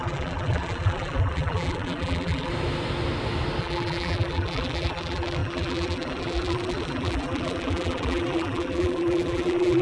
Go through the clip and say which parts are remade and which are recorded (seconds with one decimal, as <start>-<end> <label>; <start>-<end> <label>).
0.0-2.5 remade; 2.5-3.6 recorded; 3.6-9.8 remade

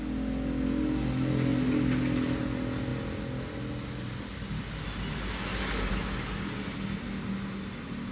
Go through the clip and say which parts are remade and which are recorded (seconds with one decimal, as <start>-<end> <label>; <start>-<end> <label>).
0.0-8.1 recorded

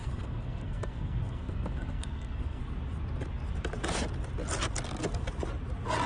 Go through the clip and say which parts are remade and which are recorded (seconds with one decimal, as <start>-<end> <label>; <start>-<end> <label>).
0.0-2.6 remade; 2.6-6.1 recorded